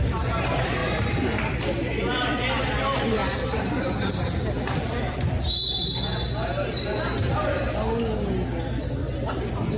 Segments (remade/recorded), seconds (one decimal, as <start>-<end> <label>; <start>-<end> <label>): 0.0-0.8 recorded; 0.8-1.5 remade; 1.5-3.2 recorded; 3.2-5.3 remade; 5.3-9.8 recorded